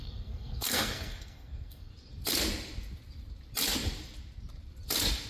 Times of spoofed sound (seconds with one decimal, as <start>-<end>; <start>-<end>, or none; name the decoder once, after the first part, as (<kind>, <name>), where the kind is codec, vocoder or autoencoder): 0.0-1.9 (codec, SNAC)

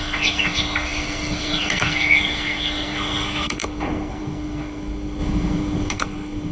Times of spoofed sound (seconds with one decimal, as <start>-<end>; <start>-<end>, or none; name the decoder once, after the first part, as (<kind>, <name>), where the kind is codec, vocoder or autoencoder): 0.0-6.5 (codec, SNAC)

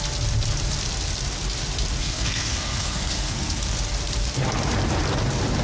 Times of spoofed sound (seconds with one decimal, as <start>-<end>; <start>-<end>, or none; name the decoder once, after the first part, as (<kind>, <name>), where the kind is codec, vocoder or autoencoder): 2.0-3.6 (codec, SNAC)

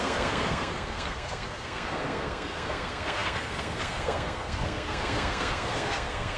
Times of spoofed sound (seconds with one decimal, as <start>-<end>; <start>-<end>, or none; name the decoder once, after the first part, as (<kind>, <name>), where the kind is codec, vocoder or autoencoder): 0.0-6.4 (codec, SNAC)

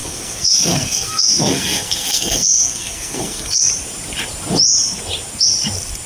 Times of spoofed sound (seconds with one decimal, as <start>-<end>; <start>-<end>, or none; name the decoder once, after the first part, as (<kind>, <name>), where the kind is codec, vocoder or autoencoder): 0.0-3.7 (codec, SNAC)

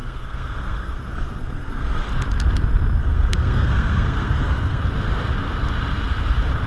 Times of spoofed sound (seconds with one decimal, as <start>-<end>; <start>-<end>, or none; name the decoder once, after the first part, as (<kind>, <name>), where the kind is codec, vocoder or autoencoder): 0.0-2.1 (codec, SNAC); 3.0-4.8

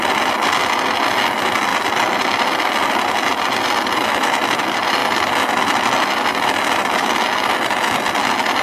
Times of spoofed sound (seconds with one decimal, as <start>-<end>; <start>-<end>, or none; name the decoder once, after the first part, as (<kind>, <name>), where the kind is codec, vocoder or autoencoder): none